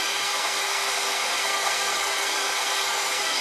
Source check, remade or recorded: remade